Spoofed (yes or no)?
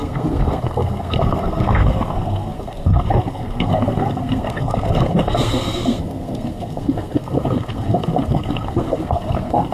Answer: yes